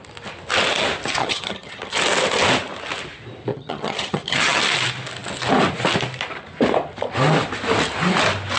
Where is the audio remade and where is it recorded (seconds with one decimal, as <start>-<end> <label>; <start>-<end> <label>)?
0.0-1.2 recorded; 1.2-2.0 remade; 2.0-3.5 recorded; 3.5-4.6 remade; 4.6-8.6 recorded